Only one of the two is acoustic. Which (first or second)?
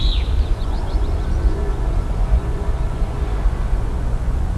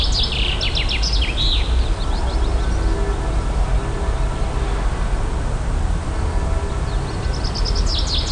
second